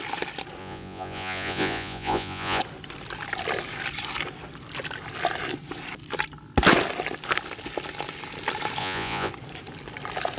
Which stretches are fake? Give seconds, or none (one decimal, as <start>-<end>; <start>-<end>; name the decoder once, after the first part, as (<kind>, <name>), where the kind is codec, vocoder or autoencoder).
0.6-2.6 (vocoder, Vocos); 8.8-9.3